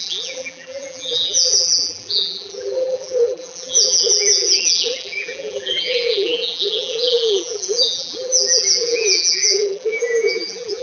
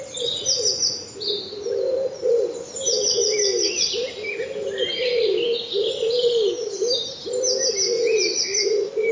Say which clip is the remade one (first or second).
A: first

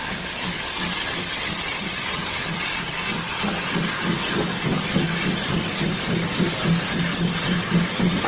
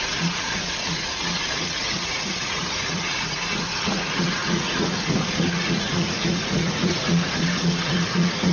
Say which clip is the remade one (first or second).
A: second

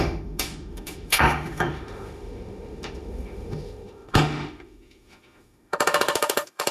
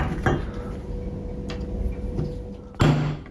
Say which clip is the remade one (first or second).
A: first